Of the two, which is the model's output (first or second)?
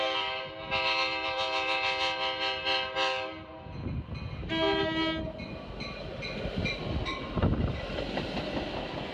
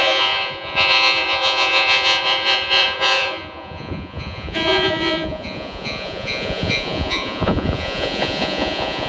second